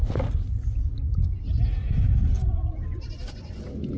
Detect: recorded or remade recorded